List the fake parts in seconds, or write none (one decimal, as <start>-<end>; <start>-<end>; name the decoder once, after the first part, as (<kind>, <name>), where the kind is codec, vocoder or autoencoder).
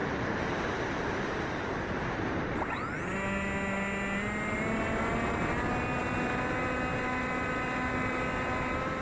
none